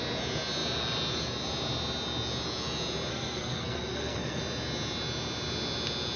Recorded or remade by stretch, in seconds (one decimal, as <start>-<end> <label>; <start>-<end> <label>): 0.0-3.1 recorded; 3.1-4.4 remade; 4.4-6.2 recorded